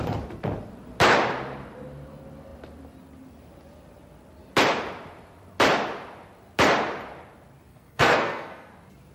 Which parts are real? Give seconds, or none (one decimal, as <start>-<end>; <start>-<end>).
0.0-7.7; 8.7-9.1